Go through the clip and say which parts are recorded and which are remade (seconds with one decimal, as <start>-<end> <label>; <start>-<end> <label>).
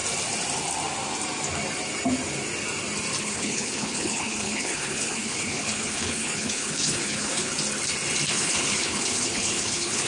0.0-3.2 recorded; 3.2-7.5 remade; 7.5-8.3 recorded; 8.3-10.1 remade